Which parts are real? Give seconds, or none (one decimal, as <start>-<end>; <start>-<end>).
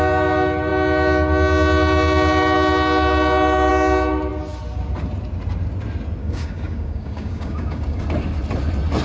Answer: 0.0-6.2; 8.0-9.0